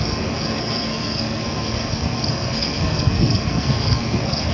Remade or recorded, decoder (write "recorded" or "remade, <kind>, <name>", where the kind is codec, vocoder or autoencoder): remade, codec, SNAC